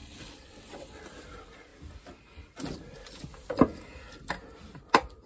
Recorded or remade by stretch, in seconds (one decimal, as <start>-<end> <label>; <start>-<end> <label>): 0.0-1.0 remade; 1.0-5.3 recorded